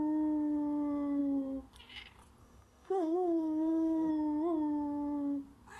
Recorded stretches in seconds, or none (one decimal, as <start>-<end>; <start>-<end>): 0.0-2.4; 4.1-5.8